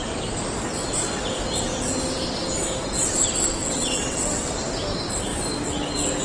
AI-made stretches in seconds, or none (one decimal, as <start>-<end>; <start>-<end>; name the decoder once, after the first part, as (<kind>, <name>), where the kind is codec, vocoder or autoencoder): 3.6-4.5 (vocoder, WaveNeXt)